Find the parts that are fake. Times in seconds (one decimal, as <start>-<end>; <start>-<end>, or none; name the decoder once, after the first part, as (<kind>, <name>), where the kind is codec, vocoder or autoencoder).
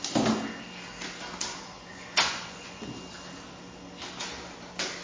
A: 1.5-2.8 (vocoder, Vocos)